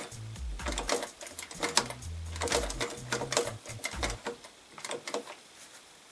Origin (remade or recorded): recorded